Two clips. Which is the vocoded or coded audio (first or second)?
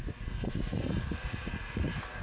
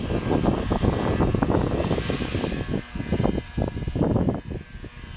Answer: first